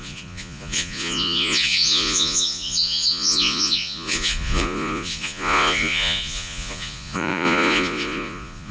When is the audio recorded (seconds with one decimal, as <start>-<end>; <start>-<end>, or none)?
none